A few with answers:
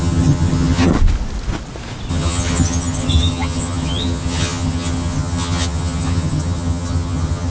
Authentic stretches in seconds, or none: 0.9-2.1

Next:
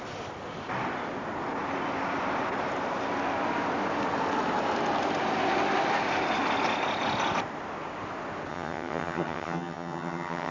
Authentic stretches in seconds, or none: 0.0-8.5

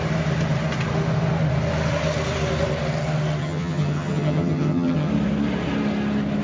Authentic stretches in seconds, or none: 0.0-3.4; 5.1-6.4

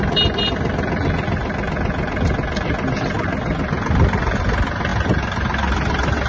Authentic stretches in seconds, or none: 0.0-6.3

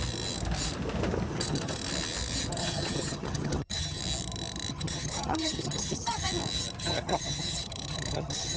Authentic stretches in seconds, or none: 0.0-1.3; 1.8-2.5; 4.0-4.7; 6.3-6.8

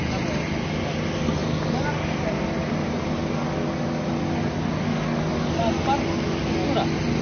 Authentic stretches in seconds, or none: 0.0-7.2

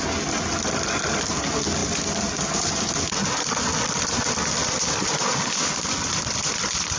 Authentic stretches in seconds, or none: 0.0-7.0